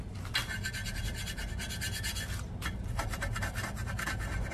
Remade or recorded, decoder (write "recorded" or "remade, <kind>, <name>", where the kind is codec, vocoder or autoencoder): recorded